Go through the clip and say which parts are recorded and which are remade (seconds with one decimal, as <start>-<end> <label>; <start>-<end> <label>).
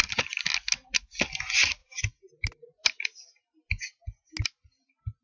0.0-5.2 recorded